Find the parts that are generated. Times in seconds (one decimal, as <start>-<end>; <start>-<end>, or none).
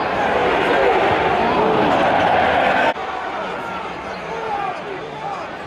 none